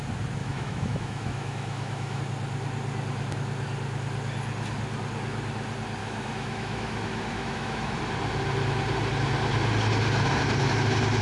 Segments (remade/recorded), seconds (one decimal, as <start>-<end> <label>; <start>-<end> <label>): 0.0-0.4 recorded; 0.4-2.2 remade; 2.2-6.0 recorded; 6.0-8.0 remade; 8.0-11.2 recorded